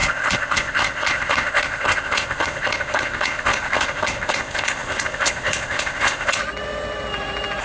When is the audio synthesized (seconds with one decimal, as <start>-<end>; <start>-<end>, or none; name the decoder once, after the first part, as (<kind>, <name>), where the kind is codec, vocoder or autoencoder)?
0.0-6.4 (codec, ZipCodec)